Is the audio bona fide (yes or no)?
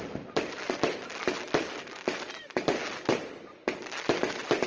yes